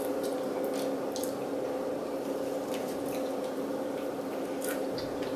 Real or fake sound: fake